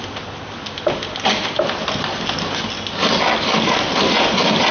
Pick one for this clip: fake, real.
real